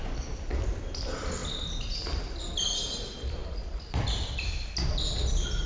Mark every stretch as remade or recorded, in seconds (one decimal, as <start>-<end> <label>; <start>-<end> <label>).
0.0-5.7 recorded